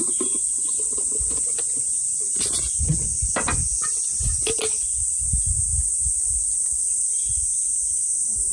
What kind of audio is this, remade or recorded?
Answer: recorded